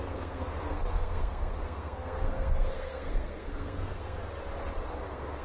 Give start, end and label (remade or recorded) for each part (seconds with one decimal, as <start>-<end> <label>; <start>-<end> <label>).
0.0-4.2 remade; 4.2-5.0 recorded; 5.0-5.4 remade